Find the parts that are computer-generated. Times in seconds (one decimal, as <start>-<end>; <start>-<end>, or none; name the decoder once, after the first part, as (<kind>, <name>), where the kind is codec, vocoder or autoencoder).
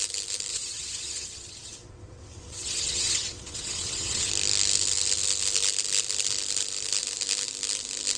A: 0.5-4.3 (vocoder, WaveNeXt)